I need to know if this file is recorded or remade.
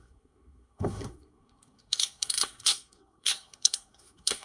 remade